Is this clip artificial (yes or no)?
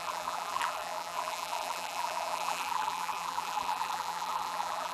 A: yes